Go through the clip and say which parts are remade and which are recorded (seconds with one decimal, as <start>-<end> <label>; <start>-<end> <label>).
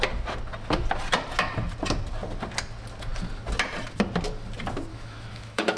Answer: 0.0-4.9 recorded; 4.9-5.8 remade